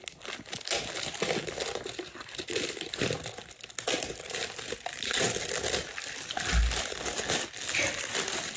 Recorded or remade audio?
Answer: recorded